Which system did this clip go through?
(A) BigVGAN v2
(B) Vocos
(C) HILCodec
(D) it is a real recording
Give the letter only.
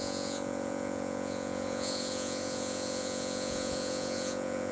B